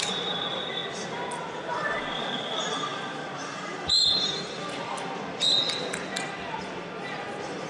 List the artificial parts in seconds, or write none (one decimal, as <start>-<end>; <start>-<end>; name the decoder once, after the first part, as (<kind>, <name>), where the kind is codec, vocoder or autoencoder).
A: 0.0-0.8 (vocoder, BigVGAN v2); 1.4-7.7

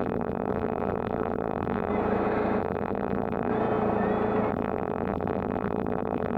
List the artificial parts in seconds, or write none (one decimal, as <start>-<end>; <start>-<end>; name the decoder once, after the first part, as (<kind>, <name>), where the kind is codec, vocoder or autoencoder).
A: 0.0-1.9 (vocoder, BigVGAN v2); 2.6-3.5; 4.5-6.4